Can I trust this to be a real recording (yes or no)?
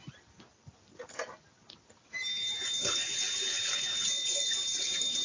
yes